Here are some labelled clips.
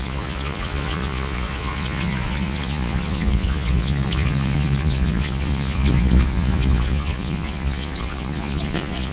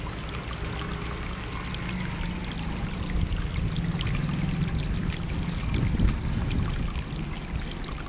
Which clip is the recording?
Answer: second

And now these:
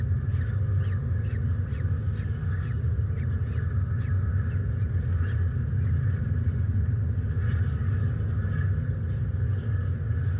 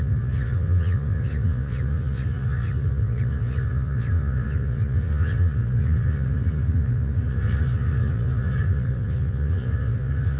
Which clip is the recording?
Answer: first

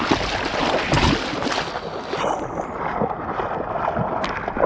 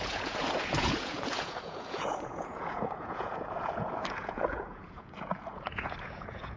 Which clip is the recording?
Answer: first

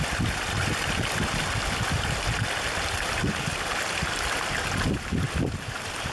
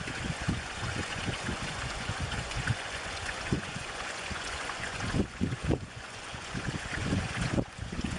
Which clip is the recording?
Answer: first